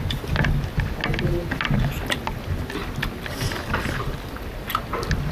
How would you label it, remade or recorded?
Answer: recorded